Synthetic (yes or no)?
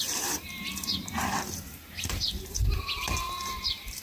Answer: yes